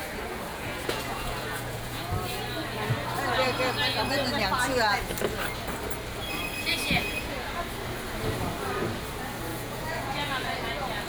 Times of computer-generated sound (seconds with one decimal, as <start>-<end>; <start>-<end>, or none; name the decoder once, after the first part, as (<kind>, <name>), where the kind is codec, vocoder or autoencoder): 0.5-2.1 (vocoder, Vocos); 6.7-7.5; 9.5-10.5